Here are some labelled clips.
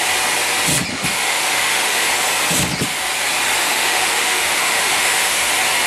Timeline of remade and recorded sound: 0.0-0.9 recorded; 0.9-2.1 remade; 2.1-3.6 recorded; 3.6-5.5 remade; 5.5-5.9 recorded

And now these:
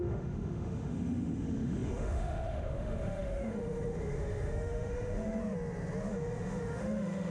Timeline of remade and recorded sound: 0.0-5.4 remade; 5.4-6.1 recorded; 6.1-7.3 remade

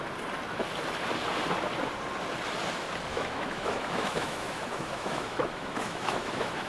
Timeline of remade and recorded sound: 0.0-3.1 recorded; 3.1-6.7 remade

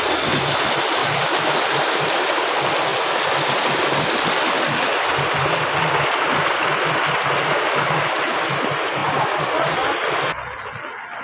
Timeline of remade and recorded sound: 0.0-1.0 recorded; 1.0-1.6 remade; 1.6-11.2 recorded